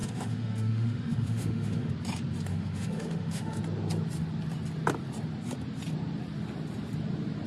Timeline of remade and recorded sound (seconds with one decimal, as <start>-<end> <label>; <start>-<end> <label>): 0.0-1.9 remade; 1.9-2.5 recorded; 2.5-3.6 remade; 3.6-7.5 recorded